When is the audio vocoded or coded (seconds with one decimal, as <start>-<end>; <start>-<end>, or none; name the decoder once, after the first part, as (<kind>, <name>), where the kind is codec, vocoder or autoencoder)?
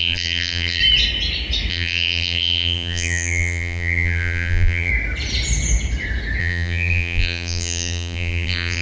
0.0-0.8 (vocoder, BigVGAN v2); 1.7-4.9; 6.4-8.8